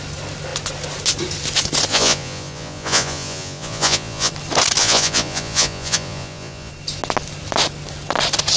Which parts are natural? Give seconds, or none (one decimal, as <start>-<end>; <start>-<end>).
0.0-1.9; 4.3-4.8; 6.7-8.6